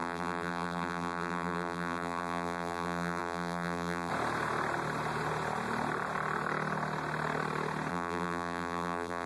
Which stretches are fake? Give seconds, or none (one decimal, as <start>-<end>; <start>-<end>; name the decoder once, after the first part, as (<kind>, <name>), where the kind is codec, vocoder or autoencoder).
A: 0.0-4.1 (vocoder, BigVGAN v2); 7.9-9.3